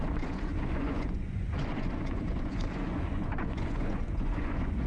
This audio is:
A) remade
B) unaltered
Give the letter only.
A